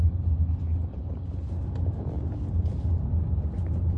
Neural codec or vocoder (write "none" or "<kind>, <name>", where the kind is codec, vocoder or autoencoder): none